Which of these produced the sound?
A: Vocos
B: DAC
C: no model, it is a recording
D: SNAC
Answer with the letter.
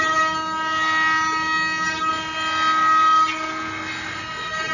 C